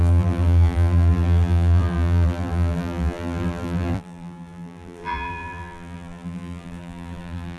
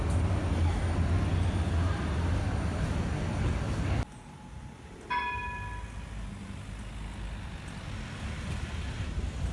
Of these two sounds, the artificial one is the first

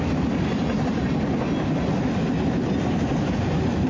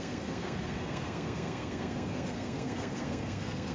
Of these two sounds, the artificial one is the second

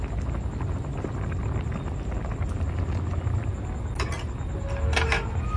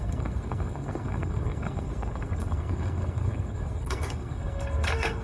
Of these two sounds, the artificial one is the second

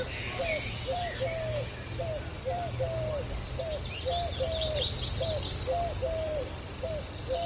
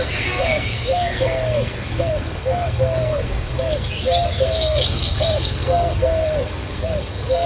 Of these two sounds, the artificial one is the second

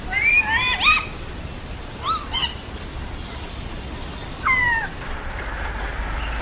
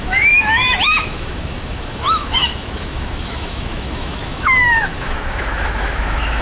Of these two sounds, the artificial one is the second